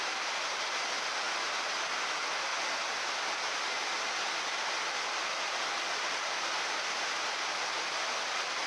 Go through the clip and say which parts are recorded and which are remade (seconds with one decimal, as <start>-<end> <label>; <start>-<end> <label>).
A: 0.0-8.7 recorded